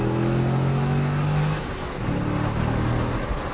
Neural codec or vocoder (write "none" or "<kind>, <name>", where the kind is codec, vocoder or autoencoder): none